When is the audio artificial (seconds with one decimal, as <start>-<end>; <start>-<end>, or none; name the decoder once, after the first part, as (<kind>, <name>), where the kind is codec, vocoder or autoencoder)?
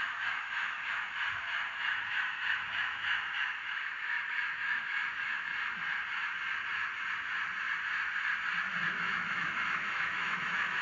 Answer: 0.0-5.5 (autoencoder, DAC-VAE); 8.9-10.8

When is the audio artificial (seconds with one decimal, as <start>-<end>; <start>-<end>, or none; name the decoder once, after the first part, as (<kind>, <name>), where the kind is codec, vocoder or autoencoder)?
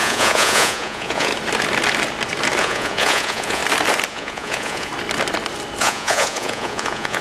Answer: 0.0-1.3 (vocoder, Vocos); 2.6-3.6; 4.1-4.9; 5.8-7.2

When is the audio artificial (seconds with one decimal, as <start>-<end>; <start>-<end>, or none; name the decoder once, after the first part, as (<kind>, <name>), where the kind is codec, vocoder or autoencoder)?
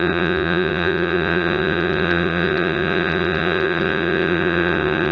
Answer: 0.0-5.1 (vocoder, Vocos)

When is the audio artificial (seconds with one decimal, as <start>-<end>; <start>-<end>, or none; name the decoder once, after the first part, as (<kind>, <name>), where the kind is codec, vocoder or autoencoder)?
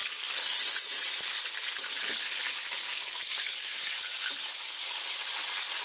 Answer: 0.0-0.6 (codec, DAC); 2.8-3.8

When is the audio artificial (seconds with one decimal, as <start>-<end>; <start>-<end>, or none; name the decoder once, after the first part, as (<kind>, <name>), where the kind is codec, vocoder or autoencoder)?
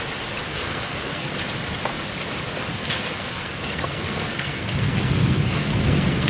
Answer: 0.5-1.3 (codec, SNAC); 2.7-6.3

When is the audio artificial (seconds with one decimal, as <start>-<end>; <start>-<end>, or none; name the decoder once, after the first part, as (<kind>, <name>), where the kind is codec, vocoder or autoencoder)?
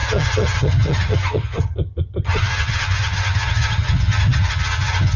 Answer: 0.0-5.2 (vocoder, HiFi-GAN)